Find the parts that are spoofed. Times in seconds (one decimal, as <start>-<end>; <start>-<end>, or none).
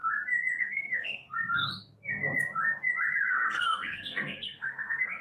0.6-1.7; 3.3-5.2